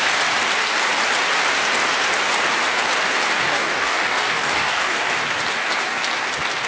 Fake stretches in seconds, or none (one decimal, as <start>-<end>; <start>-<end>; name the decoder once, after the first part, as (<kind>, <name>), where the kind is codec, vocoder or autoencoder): 3.5-5.1 (codec, DAC)